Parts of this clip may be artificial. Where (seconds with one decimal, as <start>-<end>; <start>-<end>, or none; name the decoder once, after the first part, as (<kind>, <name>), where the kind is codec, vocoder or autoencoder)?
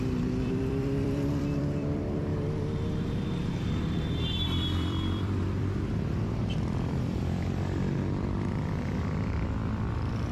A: 0.0-2.3 (vocoder, BigVGAN v2); 3.6-10.3